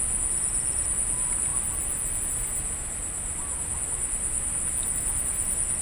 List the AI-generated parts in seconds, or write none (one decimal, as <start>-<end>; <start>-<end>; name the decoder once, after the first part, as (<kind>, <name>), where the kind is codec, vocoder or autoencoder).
none